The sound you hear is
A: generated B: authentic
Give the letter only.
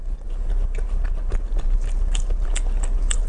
B